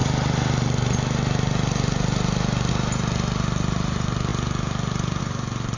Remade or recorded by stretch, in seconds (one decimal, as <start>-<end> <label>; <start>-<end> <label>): 0.0-5.8 recorded